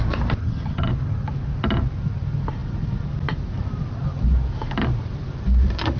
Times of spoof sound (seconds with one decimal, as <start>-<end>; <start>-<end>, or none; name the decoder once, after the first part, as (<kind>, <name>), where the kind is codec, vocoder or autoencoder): 0.4-0.9 (vocoder, HiFi-GAN)